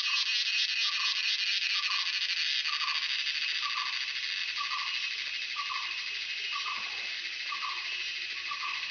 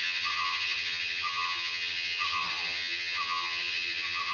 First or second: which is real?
first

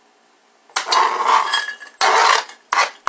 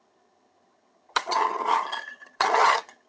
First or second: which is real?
first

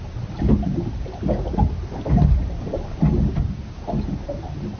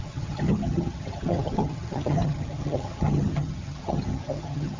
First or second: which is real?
first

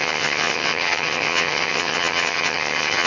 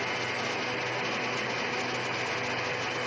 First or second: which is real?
second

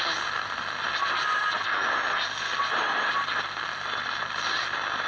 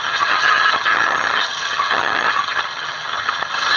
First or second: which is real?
first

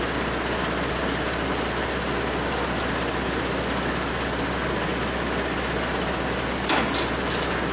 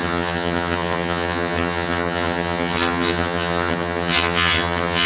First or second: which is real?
first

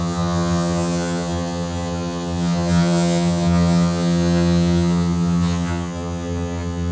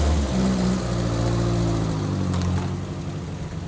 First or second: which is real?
second